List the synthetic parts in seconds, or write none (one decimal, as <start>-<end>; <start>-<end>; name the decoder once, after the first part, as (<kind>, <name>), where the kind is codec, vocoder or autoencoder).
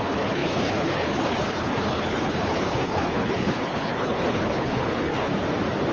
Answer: 0.0-5.3 (codec, HILCodec)